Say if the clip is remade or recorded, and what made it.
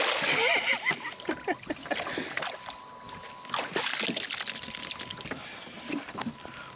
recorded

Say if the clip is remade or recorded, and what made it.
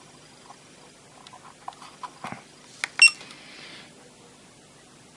recorded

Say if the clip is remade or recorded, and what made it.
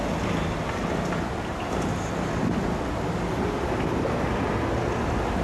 recorded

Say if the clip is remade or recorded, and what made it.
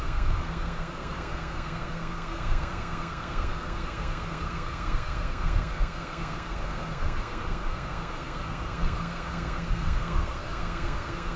remade, codec, SNAC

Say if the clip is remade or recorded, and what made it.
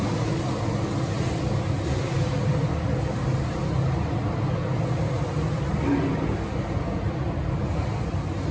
recorded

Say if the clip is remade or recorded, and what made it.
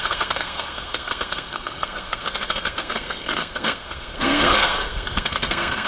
remade, codec, SNAC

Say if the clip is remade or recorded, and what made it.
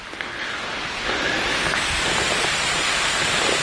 recorded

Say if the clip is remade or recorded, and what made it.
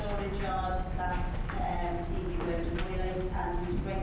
recorded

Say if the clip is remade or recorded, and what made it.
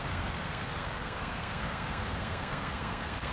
remade, codec, SNAC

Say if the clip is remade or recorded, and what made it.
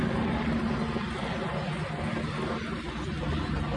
recorded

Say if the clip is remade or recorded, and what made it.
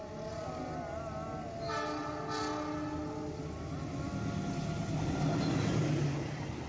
recorded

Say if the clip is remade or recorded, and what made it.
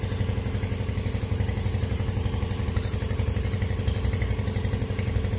recorded